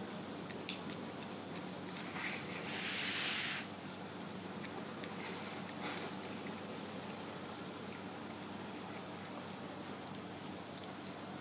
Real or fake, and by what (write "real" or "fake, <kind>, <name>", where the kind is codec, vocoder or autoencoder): real